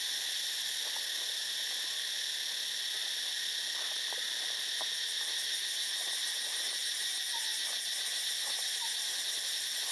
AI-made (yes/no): no